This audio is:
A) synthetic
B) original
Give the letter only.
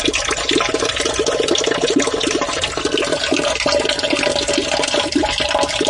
B